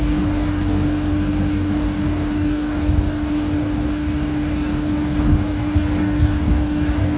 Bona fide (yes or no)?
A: no